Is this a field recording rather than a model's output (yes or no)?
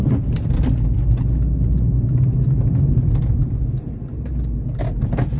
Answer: yes